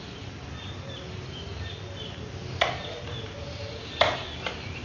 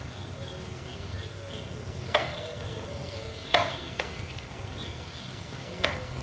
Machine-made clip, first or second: second